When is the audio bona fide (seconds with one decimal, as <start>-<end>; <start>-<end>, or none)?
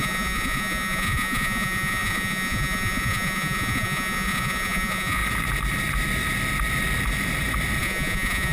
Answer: 5.2-7.8